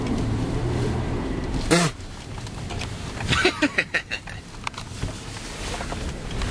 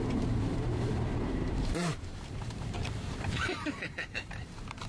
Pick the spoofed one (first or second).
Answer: second